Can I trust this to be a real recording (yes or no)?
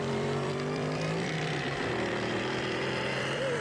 no